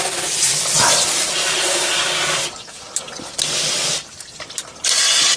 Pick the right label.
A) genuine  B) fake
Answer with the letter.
A